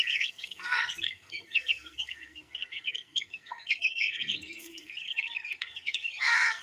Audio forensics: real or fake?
fake